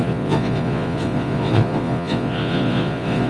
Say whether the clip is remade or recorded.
remade